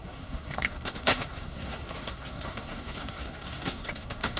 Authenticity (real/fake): fake